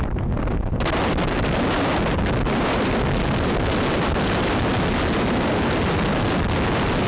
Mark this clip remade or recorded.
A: recorded